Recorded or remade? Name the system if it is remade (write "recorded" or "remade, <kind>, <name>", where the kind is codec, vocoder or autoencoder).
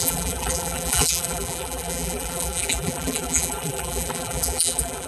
remade, vocoder, BigVGAN v2